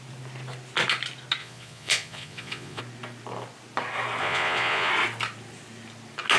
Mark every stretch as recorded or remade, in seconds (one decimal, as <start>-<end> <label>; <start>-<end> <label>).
0.0-1.4 recorded; 1.4-2.8 remade; 2.8-4.2 recorded; 4.2-4.9 remade; 4.9-6.4 recorded